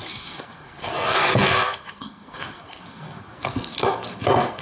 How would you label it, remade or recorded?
remade